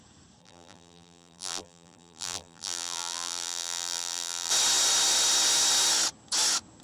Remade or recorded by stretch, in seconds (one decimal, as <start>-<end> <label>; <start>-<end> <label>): 0.0-0.4 recorded; 0.4-4.5 remade; 4.5-6.8 recorded